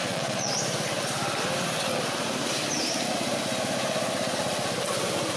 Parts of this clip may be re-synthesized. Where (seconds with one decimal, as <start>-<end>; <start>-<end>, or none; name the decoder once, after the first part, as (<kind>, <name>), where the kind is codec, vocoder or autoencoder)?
0.0-0.5 (vocoder, Vocos)